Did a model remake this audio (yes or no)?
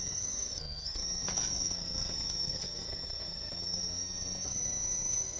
yes